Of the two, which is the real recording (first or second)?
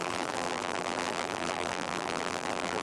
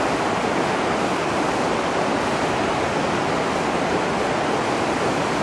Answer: second